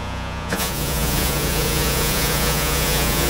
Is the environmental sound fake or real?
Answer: fake